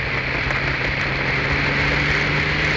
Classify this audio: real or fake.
real